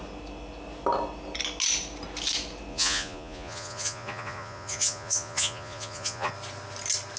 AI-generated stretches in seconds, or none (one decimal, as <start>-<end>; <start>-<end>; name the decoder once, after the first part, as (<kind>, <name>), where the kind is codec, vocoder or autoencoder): 2.7-6.3 (vocoder, Vocos)